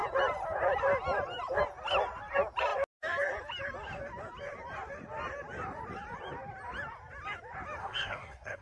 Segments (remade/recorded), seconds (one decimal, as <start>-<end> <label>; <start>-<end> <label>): 0.0-7.8 recorded; 7.8-8.6 remade